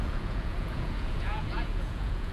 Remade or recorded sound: remade